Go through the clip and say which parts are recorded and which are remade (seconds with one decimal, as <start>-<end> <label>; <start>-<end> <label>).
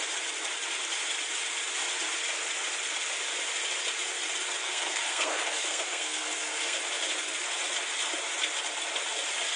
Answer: 0.0-4.6 recorded; 4.6-6.8 remade; 6.8-9.6 recorded